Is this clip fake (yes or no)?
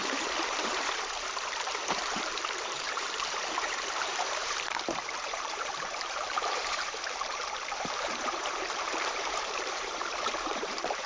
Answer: yes